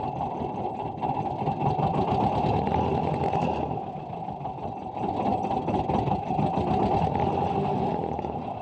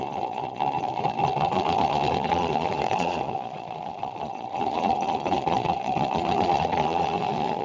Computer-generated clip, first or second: second